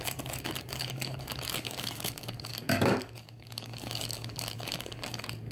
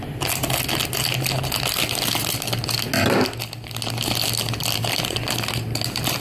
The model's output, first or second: first